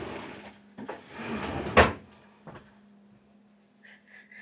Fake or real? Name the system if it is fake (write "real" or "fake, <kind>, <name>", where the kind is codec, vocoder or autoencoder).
real